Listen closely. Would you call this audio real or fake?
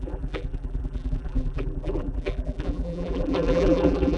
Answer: fake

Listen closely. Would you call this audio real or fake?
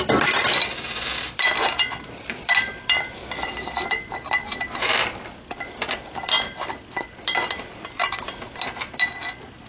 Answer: fake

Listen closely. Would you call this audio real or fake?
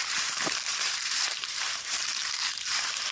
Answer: fake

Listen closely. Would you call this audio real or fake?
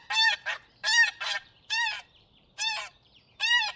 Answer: fake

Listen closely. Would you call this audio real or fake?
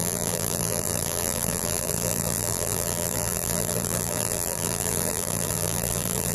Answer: fake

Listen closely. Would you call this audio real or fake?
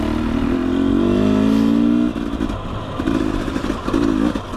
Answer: real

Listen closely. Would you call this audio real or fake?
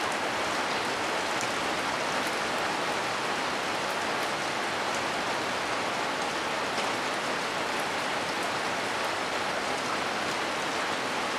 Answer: real